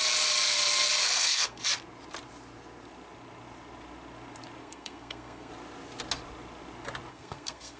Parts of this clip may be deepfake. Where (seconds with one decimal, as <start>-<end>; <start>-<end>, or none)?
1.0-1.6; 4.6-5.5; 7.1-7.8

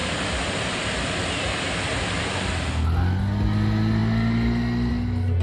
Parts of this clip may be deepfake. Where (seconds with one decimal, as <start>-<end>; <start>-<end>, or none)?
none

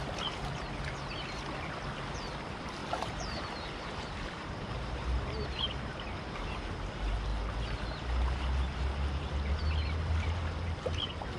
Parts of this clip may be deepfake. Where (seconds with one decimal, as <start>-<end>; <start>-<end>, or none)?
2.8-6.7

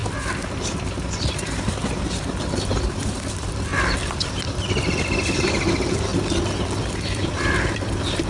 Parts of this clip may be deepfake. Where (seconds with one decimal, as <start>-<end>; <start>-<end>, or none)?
0.0-1.8; 3.3-3.7; 4.7-6.1; 6.8-8.3

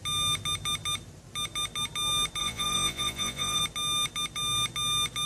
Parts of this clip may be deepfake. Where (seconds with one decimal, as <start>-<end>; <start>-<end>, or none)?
2.4-3.6